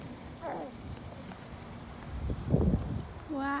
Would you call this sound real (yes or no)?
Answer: yes